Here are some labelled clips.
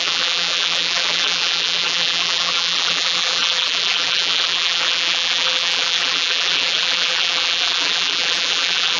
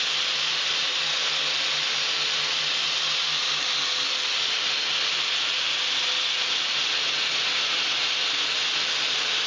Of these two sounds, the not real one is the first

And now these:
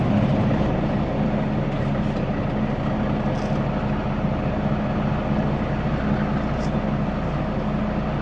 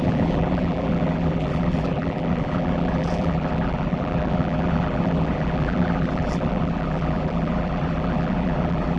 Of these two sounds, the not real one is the second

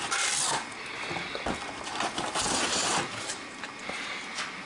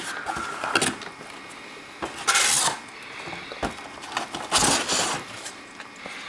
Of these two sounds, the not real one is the first